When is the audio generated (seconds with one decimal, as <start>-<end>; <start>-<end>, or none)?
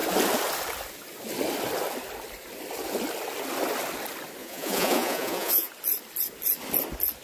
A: 4.4-5.7